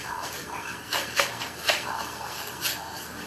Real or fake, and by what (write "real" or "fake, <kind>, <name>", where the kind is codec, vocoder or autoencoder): fake, codec, SNAC